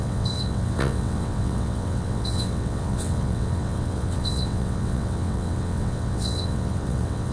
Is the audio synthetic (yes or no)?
yes